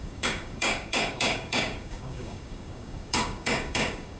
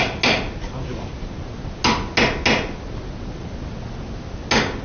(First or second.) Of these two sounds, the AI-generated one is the first